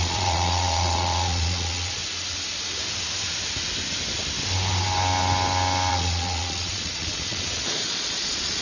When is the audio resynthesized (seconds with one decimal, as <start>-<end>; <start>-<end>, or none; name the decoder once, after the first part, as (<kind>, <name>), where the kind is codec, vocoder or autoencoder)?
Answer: 0.0-2.0 (vocoder, Vocos); 5.9-8.6